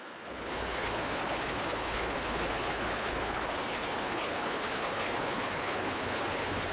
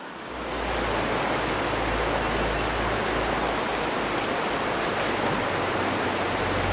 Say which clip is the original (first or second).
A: second